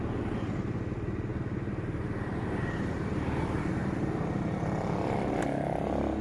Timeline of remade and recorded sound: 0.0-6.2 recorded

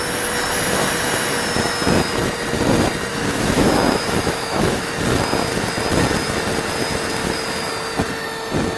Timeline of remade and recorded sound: 0.0-3.1 recorded; 3.1-4.9 remade; 4.9-7.2 recorded; 7.2-7.7 remade; 7.7-8.8 recorded